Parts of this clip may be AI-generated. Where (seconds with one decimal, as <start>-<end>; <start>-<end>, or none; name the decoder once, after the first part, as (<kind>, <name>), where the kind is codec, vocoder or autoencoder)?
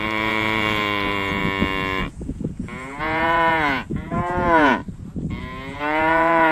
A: 0.0-1.4 (vocoder, Vocos); 2.0-4.8; 5.4-6.5